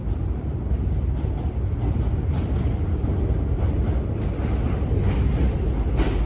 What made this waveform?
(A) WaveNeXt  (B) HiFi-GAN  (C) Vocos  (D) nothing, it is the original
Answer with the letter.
D